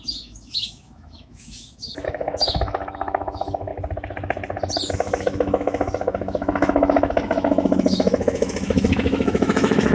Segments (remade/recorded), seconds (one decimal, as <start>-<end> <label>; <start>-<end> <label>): 0.0-3.7 remade; 3.7-4.9 recorded; 4.9-9.9 remade